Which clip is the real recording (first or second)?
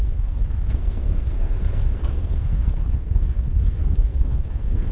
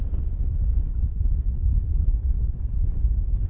second